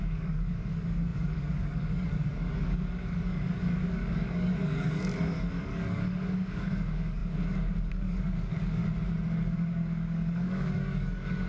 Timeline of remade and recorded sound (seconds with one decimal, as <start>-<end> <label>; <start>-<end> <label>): 0.0-8.8 remade; 8.8-9.4 recorded; 9.4-11.5 remade